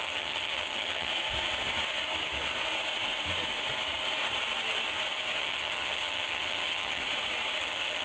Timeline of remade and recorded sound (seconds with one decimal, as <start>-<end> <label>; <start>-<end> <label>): 0.0-1.1 remade; 1.1-5.4 recorded; 5.4-7.0 remade; 7.0-7.6 recorded; 7.6-8.0 remade